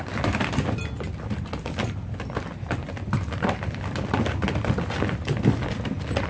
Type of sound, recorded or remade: recorded